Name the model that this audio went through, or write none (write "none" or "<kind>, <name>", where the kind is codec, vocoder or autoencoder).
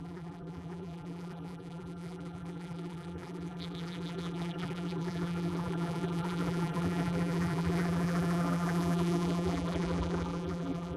vocoder, BigVGAN v2